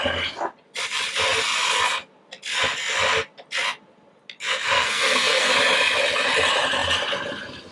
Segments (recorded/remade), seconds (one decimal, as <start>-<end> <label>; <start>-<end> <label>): 0.0-4.5 recorded; 4.5-5.5 remade; 5.5-7.7 recorded

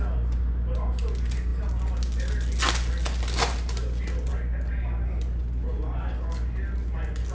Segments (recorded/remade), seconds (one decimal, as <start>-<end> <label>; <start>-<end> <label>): 0.0-7.3 recorded